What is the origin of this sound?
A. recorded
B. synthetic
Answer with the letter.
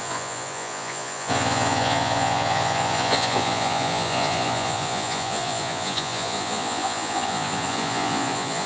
B